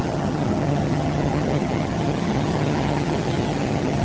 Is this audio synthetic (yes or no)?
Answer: yes